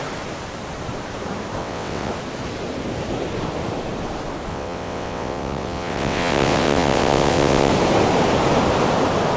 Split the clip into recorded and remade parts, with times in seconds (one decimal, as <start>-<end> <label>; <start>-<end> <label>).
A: 0.0-1.6 recorded; 1.6-2.1 remade; 2.1-4.5 recorded; 4.5-7.7 remade; 7.7-9.4 recorded